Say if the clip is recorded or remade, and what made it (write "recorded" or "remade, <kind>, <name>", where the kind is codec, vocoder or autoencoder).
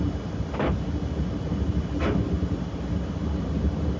recorded